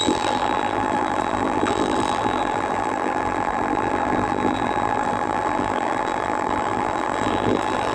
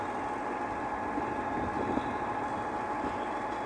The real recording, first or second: second